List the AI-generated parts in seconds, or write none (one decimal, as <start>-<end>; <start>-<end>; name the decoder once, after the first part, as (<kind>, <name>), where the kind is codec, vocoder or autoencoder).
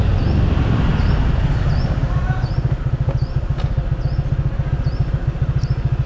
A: none